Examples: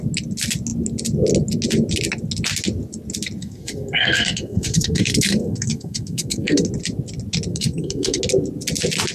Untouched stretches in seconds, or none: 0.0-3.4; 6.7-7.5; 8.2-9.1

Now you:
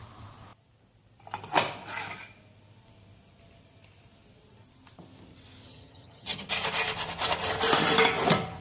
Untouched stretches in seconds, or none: 0.0-5.7; 6.5-8.6